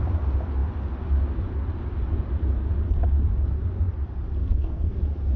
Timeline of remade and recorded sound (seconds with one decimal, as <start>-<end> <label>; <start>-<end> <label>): 0.0-4.4 recorded; 4.4-5.0 remade; 5.0-5.4 recorded